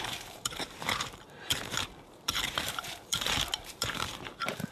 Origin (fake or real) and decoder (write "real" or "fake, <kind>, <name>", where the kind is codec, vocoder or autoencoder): fake, vocoder, BigVGAN v2